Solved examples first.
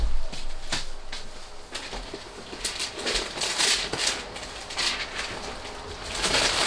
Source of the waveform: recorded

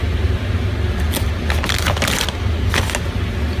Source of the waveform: recorded